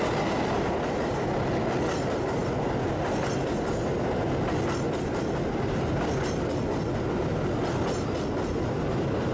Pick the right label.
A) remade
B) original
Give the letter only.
B